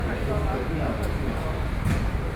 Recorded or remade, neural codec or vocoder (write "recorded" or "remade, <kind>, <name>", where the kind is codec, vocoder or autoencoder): recorded